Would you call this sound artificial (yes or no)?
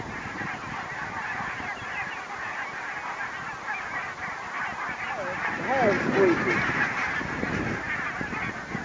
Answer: no